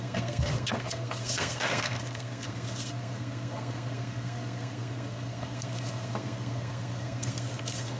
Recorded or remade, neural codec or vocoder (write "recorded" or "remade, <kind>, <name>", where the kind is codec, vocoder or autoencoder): remade, codec, SNAC